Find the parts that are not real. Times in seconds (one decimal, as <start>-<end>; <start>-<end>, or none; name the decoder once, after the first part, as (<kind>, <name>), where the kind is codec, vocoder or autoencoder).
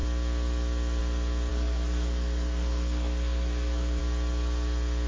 1.5-4.0 (codec, SNAC)